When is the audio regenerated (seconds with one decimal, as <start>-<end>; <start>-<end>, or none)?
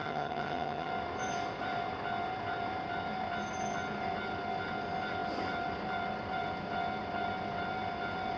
0.0-0.9